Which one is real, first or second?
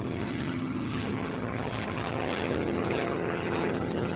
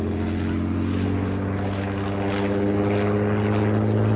second